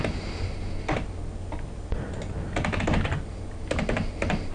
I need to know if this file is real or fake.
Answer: real